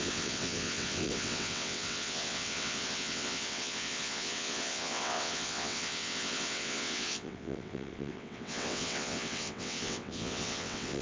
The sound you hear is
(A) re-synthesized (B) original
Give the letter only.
A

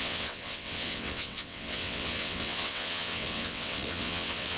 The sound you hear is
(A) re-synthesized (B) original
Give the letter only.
A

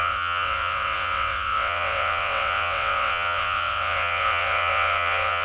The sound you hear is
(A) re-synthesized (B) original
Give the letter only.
A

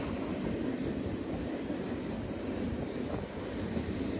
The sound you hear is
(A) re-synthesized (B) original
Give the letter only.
B